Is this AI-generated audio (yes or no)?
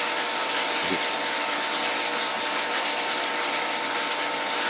no